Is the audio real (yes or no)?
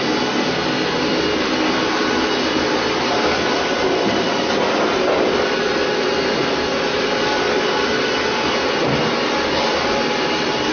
yes